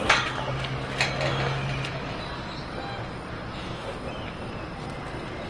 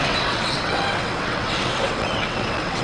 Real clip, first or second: first